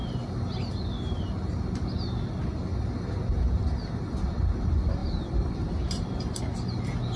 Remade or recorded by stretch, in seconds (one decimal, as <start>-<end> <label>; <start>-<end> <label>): 0.0-5.0 recorded; 5.0-6.4 remade; 6.4-7.2 recorded